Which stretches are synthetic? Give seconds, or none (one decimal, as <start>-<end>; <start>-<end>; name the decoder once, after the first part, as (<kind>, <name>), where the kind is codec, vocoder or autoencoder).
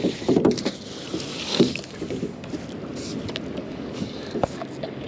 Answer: 1.3-2.5 (codec, DAC); 3.6-5.1